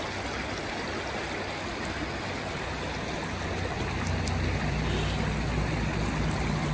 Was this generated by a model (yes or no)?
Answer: no